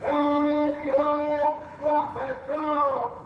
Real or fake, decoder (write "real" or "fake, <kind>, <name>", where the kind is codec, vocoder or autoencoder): fake, codec, HILCodec